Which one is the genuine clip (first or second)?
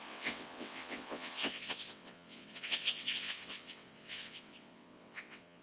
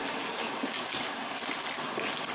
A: second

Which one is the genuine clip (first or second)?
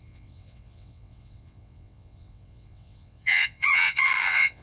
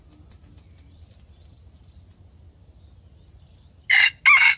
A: second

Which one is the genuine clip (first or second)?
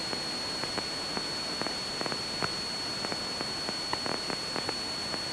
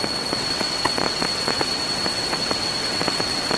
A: first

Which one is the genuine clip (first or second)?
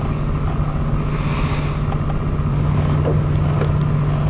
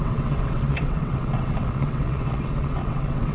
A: first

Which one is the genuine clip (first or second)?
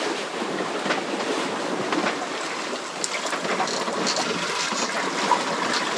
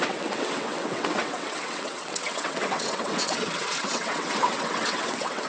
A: first